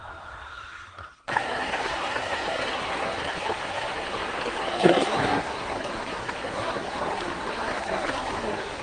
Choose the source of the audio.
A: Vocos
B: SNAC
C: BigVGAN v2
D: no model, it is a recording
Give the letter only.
B